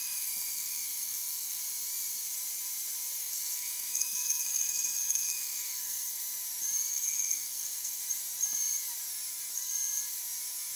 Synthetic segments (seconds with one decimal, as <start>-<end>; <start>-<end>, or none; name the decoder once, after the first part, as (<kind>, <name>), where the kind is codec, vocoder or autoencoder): 0.0-1.6 (codec, SNAC); 3.2-6.2; 6.9-8.0